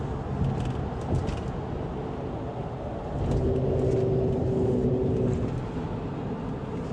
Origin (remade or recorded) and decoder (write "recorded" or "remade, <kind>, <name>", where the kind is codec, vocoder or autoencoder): recorded